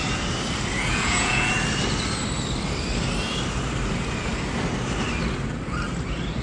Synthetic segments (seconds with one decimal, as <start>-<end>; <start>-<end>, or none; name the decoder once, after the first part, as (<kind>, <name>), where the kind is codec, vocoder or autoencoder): 0.7-1.5 (vocoder, Vocos)